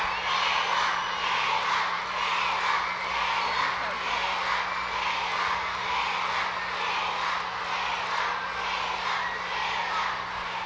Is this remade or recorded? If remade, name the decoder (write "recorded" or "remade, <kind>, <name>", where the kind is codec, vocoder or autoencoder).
recorded